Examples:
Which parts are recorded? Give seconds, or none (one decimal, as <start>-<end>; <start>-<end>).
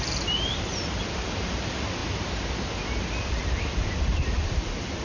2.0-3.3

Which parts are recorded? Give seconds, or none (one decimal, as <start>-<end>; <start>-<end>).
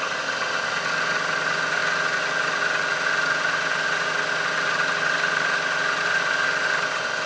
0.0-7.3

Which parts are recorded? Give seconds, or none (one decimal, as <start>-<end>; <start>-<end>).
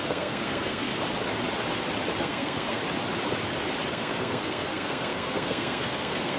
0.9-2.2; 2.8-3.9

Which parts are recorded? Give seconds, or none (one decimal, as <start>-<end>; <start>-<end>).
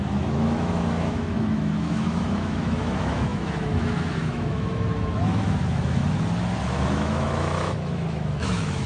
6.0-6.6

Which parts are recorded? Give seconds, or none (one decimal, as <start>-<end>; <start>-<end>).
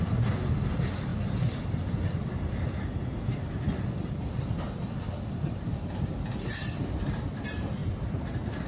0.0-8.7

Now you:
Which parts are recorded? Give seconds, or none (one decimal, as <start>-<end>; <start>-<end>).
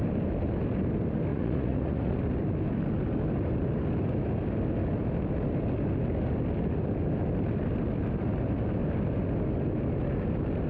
0.0-1.3; 2.2-10.7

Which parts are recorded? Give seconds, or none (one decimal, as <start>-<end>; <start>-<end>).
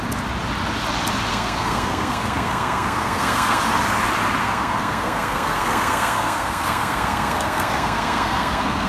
0.0-1.3; 3.6-4.4